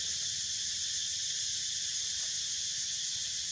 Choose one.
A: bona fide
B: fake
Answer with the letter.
A